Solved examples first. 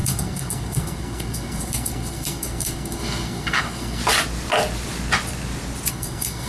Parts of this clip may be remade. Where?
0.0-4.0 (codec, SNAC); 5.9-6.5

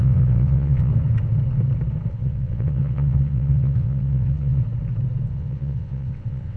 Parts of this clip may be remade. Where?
0.0-0.9 (vocoder, WaveNeXt); 2.1-4.6; 5.3-6.6

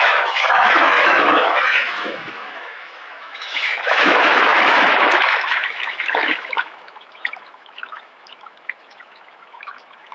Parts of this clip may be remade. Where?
0.0-10.1 (autoencoder, DAC-VAE)

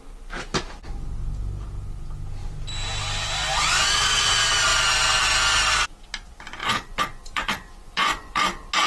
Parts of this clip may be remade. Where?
3.5-4.3 (vocoder, Vocos); 6.6-8.4

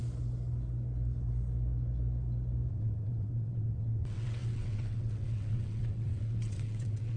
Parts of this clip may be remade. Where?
2.7-7.2 (vocoder, WaveNeXt)